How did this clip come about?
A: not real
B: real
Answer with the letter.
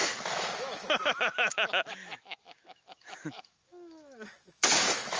A